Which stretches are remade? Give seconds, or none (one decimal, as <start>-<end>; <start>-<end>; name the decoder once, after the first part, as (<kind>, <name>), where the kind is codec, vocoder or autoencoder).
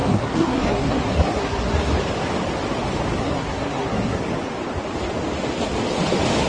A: 0.0-1.9 (codec, SNAC); 3.2-4.2